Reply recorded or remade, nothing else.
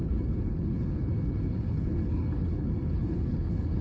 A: remade